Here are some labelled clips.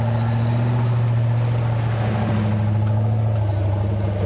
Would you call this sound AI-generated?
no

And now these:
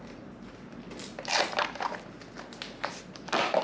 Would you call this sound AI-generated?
no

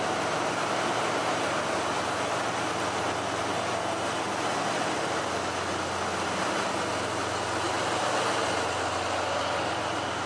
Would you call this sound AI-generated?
no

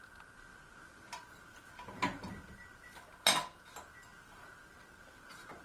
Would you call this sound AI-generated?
no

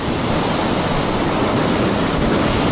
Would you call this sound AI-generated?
no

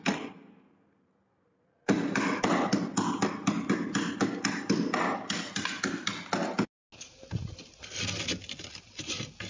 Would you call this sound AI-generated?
no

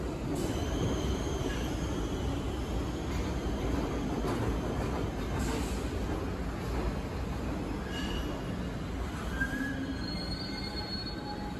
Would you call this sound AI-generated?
no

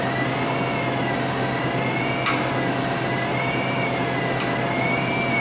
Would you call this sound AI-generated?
no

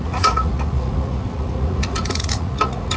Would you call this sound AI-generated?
yes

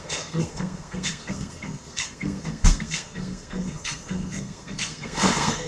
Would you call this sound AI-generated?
yes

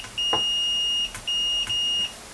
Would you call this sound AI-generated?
no